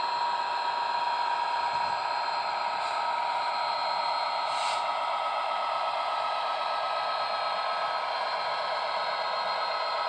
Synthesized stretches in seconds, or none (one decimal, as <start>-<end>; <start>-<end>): 4.9-6.6